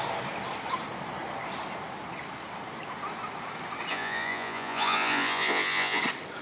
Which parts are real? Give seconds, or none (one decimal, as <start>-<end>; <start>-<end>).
0.0-3.9; 6.0-6.4